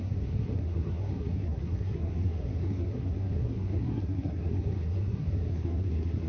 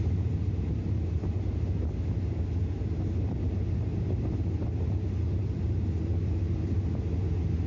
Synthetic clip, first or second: first